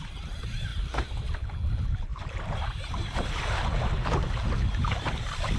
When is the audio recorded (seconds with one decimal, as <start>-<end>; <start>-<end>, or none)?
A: 0.7-1.7